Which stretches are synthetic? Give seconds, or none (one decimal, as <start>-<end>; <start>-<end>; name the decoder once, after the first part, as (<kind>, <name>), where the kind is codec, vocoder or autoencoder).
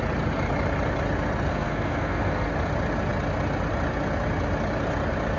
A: 1.5-2.5 (codec, SNAC)